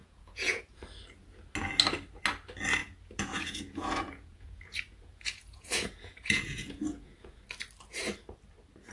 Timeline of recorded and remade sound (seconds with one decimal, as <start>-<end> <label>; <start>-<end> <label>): 0.0-0.8 remade; 0.8-2.8 recorded; 2.8-7.4 remade; 7.4-8.9 recorded